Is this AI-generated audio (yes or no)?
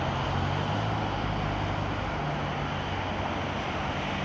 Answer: no